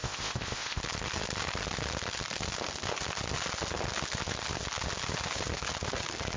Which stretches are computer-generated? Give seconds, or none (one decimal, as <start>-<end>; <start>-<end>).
0.0-0.8